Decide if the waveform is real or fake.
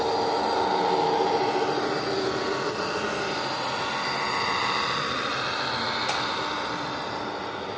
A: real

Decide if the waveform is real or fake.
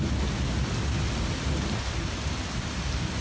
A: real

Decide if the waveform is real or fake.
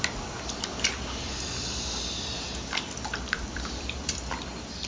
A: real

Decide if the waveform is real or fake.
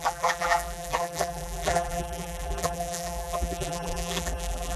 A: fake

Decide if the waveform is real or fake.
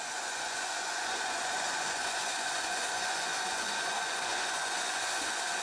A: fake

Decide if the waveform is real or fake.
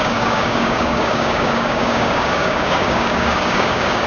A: fake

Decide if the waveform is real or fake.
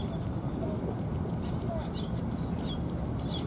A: real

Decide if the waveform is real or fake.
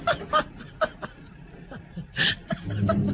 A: real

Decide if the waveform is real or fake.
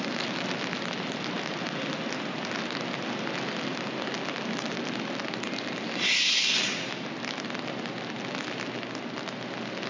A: real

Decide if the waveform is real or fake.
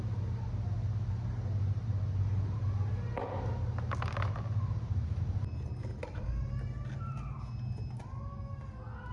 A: real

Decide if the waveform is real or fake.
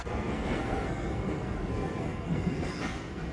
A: fake